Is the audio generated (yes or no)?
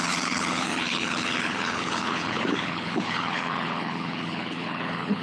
yes